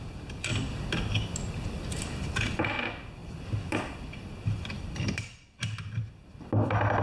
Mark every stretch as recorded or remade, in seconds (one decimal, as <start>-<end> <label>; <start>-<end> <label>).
0.0-3.2 recorded; 3.2-6.0 remade; 6.0-7.0 recorded